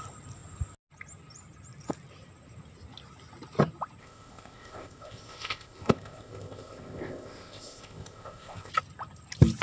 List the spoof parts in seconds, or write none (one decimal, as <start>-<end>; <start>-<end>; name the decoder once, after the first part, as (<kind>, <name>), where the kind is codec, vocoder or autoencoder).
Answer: 4.0-8.7 (codec, ZipCodec)

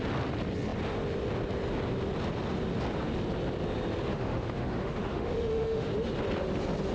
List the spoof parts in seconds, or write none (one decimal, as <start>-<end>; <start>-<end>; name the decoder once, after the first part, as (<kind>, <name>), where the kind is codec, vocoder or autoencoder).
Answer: 4.1-5.9 (autoencoder, DAC-VAE)

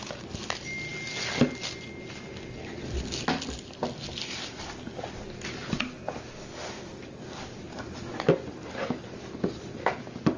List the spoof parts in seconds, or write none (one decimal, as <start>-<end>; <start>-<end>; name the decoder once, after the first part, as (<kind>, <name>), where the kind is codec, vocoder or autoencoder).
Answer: none

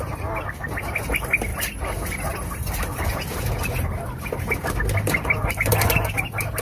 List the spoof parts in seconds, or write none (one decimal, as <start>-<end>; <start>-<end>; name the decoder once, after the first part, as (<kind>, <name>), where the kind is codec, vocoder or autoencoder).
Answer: none

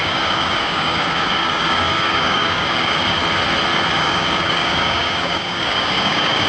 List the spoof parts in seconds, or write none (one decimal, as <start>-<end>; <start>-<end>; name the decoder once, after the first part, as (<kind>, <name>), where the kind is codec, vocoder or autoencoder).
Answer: 0.0-3.2 (codec, DAC); 3.9-6.5

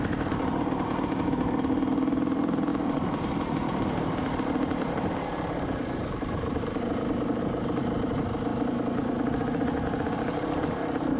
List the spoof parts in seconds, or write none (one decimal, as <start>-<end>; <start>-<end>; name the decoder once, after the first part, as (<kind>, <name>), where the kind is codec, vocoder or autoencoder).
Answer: 0.0-8.5 (vocoder, BigVGAN v2); 10.2-11.2